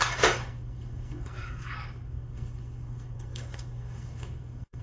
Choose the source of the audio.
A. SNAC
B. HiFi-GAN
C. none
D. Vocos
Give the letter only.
A